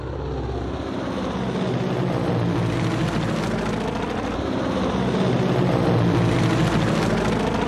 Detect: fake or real real